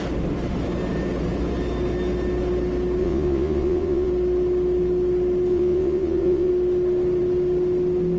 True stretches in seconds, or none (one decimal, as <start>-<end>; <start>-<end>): 0.0-3.0; 4.1-5.5; 6.5-8.2